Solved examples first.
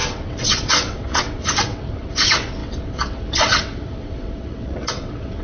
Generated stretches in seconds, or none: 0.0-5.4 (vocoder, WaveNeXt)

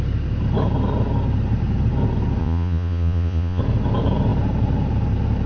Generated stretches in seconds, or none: 2.4-3.6 (vocoder, Vocos)

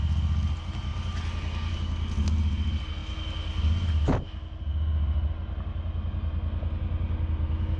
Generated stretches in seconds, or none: none

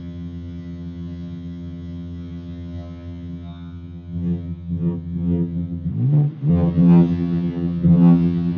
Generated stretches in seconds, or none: 0.0-5.9 (vocoder, HiFi-GAN); 6.5-8.6

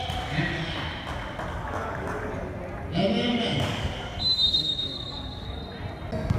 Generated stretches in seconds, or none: 1.5-2.3 (codec, DAC); 3.3-5.6

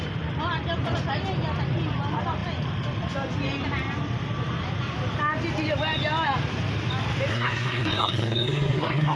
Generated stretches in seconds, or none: 7.3-9.2 (codec, SNAC)

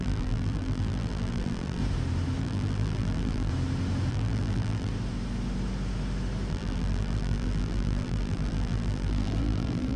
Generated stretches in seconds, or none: 0.0-1.8 (vocoder, BigVGAN v2); 2.4-3.5; 4.1-4.9; 6.5-10.0

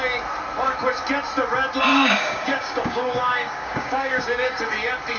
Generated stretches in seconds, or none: 1.9-4.6 (codec, DAC)